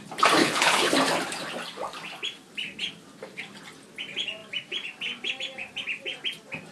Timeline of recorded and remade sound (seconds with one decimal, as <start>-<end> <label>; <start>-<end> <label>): 0.0-0.4 recorded; 0.4-0.9 remade; 0.9-6.7 recorded

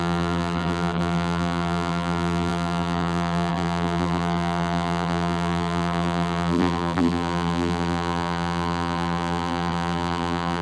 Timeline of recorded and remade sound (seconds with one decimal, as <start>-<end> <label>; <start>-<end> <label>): 0.0-10.6 remade

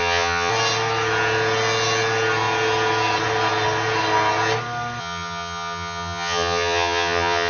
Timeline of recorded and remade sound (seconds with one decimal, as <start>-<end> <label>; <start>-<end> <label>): 0.0-0.5 remade; 0.5-5.0 recorded; 5.0-7.5 remade

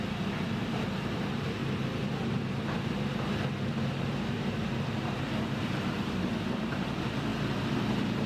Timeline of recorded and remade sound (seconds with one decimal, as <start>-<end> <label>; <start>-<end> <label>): 0.0-1.6 remade; 1.6-4.3 recorded; 4.3-8.3 remade